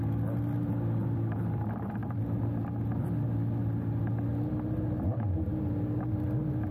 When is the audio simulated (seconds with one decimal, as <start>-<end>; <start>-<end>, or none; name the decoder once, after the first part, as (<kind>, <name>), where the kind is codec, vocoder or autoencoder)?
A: none